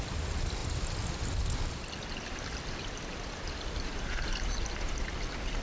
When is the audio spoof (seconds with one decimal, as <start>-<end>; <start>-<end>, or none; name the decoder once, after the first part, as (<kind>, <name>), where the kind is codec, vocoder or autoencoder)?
none